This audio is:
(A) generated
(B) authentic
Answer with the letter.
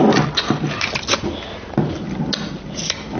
B